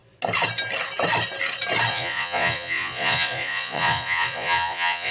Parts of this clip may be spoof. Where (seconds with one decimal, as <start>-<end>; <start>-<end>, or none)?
1.9-5.1